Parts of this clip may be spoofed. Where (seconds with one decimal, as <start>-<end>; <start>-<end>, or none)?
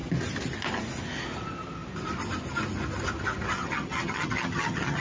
3.6-5.0